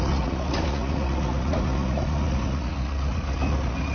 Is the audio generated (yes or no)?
yes